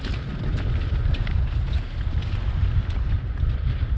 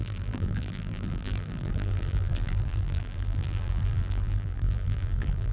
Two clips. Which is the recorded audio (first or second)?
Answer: first